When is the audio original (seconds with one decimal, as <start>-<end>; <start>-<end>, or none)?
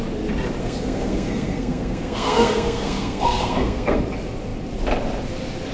0.0-0.6; 4.0-5.7